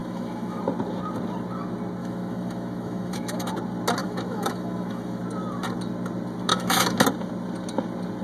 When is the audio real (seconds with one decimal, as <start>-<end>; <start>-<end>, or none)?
0.6-2.0; 3.5-4.0; 5.2-6.5; 7.0-8.2